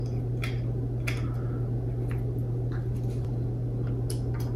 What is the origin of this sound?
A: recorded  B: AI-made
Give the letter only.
A